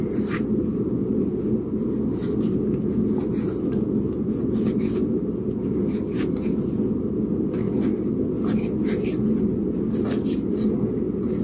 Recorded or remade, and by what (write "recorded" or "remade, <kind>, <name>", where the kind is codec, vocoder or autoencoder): recorded